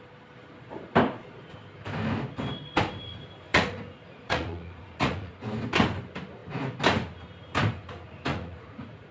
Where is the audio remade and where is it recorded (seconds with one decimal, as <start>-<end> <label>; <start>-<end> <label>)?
0.0-3.5 recorded; 3.5-5.3 remade; 5.3-8.3 recorded; 8.3-9.1 remade